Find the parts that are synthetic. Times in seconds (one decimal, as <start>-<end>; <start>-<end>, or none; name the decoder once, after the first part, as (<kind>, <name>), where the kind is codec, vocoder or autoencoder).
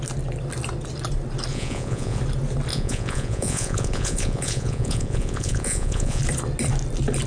1.5-2.2 (vocoder, Vocos); 2.7-6.2